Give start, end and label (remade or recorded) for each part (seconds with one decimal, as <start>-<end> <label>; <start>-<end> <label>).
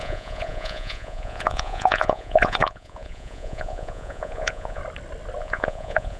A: 0.0-4.8 remade; 4.8-5.4 recorded; 5.4-6.2 remade